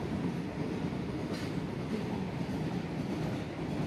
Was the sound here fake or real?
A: real